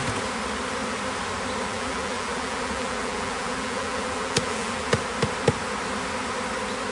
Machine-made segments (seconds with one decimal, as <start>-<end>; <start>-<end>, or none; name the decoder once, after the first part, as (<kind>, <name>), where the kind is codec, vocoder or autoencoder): 1.7-5.0 (vocoder, BigVGAN v2)